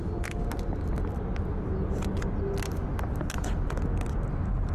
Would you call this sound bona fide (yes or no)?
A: yes